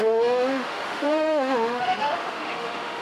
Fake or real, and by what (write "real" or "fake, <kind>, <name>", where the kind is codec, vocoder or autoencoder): fake, autoencoder, DAC-VAE